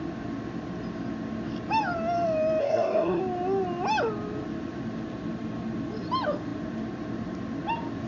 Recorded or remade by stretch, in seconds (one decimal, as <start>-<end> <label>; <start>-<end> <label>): 0.0-2.6 recorded; 2.6-3.2 remade; 3.2-8.1 recorded